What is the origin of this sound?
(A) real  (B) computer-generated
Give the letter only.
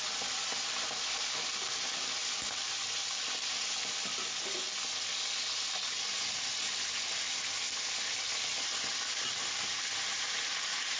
A